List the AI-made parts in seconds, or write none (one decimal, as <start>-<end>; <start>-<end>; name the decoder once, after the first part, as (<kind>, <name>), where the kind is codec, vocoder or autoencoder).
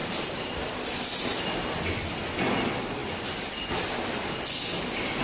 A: 3.0-4.4 (vocoder, BigVGAN v2)